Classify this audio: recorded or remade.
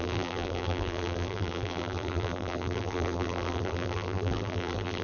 remade